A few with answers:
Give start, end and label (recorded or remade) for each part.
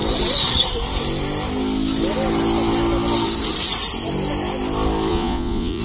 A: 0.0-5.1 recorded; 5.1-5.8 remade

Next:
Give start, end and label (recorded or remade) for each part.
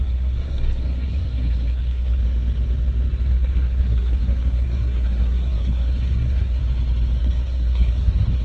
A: 0.0-2.2 remade; 2.2-3.3 recorded; 3.3-6.6 remade; 6.6-7.2 recorded; 7.2-8.4 remade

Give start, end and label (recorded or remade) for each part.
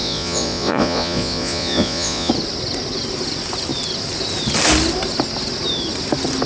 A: 0.0-2.3 remade; 2.3-6.5 recorded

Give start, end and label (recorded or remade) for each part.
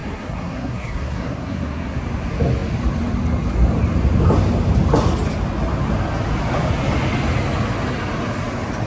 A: 0.0-2.0 remade; 2.0-8.9 recorded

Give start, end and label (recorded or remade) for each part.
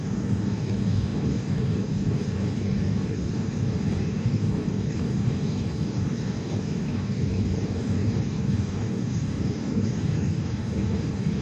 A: 0.0-11.4 remade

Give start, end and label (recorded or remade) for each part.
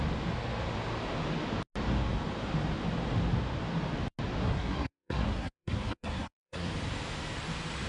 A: 0.0-4.4 recorded; 4.4-6.7 remade; 6.7-7.9 recorded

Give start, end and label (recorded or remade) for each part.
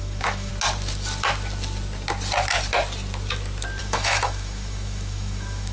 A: 0.0-0.5 remade; 0.5-3.8 recorded; 3.8-5.7 remade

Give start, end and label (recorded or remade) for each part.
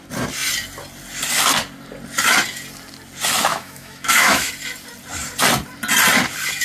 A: 0.0-3.5 recorded; 3.5-4.5 remade; 4.5-6.6 recorded